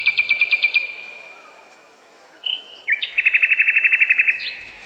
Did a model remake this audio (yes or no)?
yes